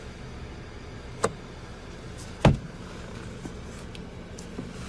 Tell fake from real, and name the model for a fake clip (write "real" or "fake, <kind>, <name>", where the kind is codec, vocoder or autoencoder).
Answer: real